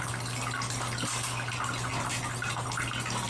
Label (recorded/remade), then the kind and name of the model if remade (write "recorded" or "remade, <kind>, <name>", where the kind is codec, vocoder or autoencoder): recorded